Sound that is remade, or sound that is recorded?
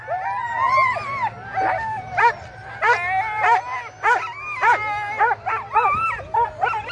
recorded